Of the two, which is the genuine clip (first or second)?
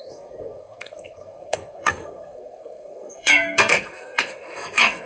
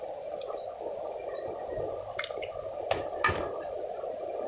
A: second